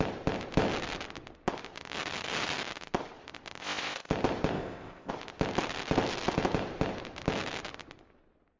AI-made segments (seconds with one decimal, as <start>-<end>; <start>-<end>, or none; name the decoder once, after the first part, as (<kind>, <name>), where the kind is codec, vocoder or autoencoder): 3.6-4.1 (codec, ZipCodec); 4.5-5.1